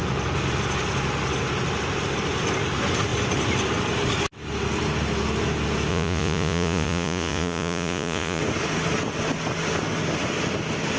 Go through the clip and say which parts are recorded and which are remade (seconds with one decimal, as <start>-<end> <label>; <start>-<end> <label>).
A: 0.0-5.9 recorded; 5.9-8.4 remade; 8.4-11.0 recorded